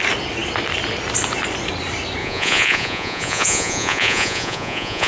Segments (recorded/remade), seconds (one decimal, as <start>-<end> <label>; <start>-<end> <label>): 0.0-2.2 recorded; 2.2-5.1 remade